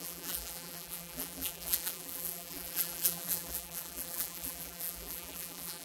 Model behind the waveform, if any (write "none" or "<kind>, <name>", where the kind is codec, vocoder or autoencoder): vocoder, BigVGAN v2